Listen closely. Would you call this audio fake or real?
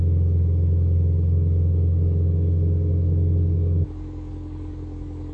fake